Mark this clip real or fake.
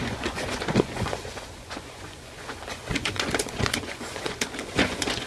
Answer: fake